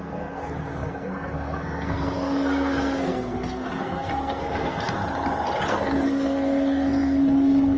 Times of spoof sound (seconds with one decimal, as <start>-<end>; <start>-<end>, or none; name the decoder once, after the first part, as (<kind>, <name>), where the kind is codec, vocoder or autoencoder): 0.0-5.0 (codec, SNAC); 5.7-7.8